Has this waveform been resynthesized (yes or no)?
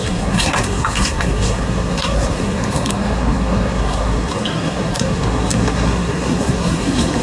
yes